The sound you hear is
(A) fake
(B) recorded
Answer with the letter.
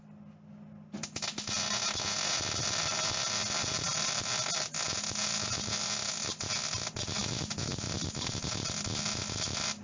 B